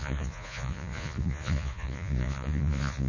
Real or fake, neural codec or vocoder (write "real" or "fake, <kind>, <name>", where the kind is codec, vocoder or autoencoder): fake, vocoder, Vocos